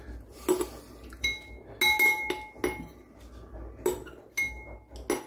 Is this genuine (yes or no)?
yes